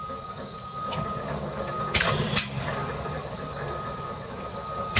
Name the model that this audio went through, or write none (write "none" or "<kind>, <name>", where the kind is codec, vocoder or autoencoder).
codec, DAC